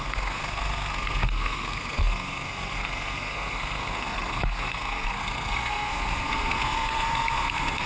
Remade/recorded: remade